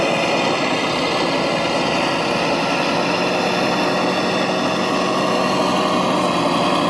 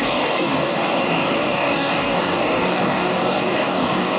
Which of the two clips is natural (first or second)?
first